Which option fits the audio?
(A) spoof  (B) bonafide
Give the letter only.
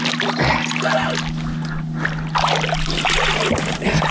B